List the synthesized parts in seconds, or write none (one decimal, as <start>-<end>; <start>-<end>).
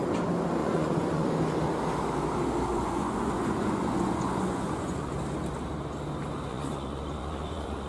0.6-1.3; 2.7-5.1; 6.5-7.9